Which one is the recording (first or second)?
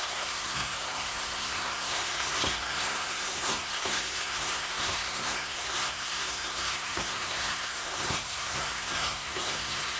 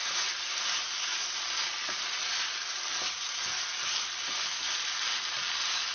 second